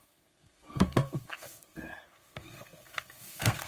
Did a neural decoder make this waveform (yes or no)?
yes